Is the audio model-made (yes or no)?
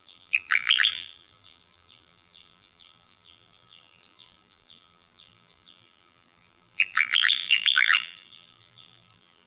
yes